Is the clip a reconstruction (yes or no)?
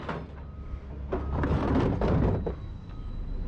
no